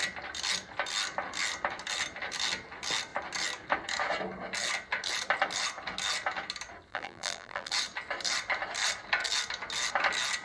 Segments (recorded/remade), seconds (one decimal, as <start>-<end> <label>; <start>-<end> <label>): 0.0-6.9 recorded; 6.9-7.7 remade; 7.7-10.4 recorded